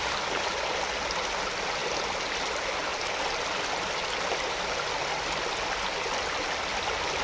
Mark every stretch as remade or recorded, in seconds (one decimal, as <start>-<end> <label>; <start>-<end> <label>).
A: 0.0-7.2 recorded

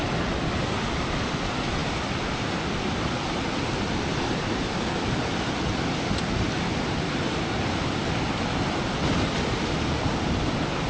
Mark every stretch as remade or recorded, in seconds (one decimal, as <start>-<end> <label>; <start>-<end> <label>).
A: 0.0-10.9 recorded

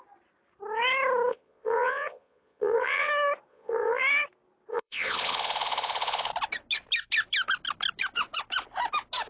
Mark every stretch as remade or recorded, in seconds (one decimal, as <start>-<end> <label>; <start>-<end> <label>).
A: 0.0-1.3 recorded; 1.3-3.1 remade; 3.1-3.5 recorded; 3.5-4.0 remade; 4.0-4.7 recorded; 4.7-6.3 remade; 6.3-9.3 recorded

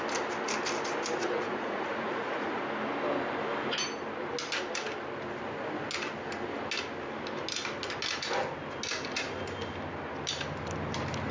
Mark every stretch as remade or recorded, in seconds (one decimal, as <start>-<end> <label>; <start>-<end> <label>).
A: 0.0-1.2 recorded; 1.2-2.6 remade; 2.6-11.3 recorded